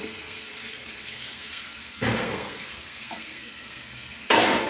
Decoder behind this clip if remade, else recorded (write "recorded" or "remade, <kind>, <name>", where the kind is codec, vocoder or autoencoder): remade, codec, SNAC